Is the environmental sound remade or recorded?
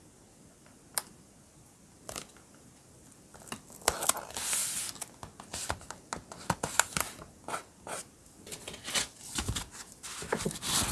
recorded